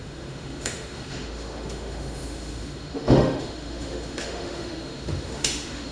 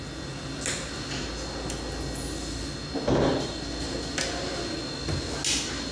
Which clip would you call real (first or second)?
second